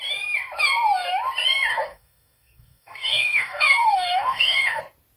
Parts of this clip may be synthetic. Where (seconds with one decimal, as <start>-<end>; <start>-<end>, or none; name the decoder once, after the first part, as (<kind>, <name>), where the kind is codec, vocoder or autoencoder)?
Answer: 1.7-4.8 (codec, DAC)